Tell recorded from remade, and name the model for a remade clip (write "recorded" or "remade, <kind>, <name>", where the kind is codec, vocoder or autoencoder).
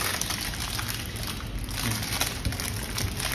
recorded